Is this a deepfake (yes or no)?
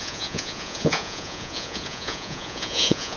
yes